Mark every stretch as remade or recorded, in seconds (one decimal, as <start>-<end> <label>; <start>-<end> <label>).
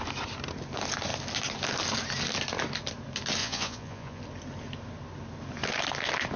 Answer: 0.0-3.4 recorded; 3.4-4.2 remade; 4.2-6.4 recorded